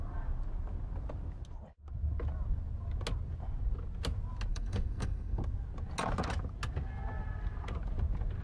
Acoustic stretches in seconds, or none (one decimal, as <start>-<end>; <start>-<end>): 0.0-4.5; 5.4-8.4